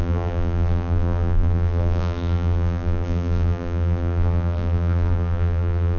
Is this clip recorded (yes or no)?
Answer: no